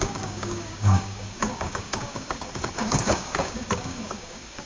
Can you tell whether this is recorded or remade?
remade